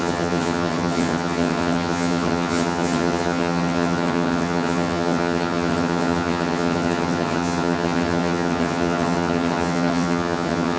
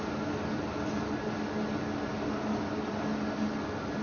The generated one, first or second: first